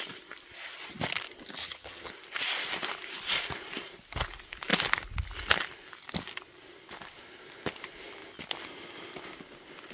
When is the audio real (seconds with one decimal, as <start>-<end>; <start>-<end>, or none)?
0.0-1.6; 2.1-9.9